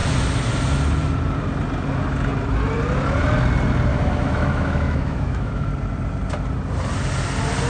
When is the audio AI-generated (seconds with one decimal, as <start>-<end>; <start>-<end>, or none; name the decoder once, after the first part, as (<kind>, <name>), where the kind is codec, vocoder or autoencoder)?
3.9-5.7 (autoencoder, DAC-VAE)